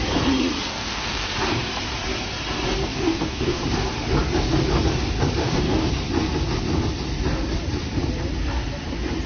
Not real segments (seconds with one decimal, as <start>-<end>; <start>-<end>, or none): 0.7-1.3; 2.9-3.6; 5.4-5.9